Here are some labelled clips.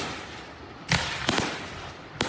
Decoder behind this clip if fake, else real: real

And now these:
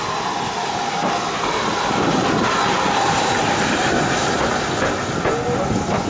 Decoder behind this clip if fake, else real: real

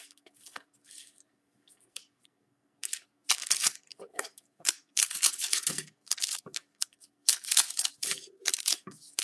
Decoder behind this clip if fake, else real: fake, codec, SNAC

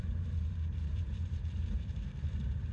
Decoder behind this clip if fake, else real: fake, vocoder, BigVGAN v2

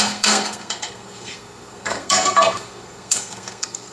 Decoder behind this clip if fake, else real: fake, codec, SNAC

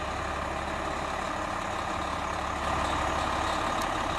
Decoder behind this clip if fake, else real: real